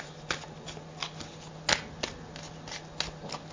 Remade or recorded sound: recorded